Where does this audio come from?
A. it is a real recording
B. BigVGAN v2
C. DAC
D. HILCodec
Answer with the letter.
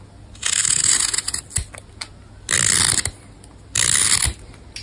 A